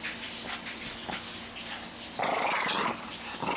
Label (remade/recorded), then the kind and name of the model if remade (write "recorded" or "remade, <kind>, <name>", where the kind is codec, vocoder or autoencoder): recorded